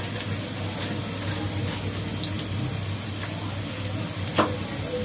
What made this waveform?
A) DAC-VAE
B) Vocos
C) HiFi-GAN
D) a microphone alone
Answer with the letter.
D